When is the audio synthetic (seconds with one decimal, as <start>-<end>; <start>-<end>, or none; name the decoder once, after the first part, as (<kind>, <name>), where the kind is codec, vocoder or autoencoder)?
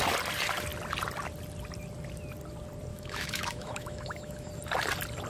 2.9-4.5 (autoencoder, DAC-VAE)